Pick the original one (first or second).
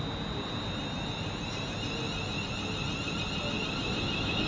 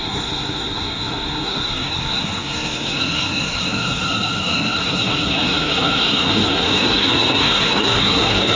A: first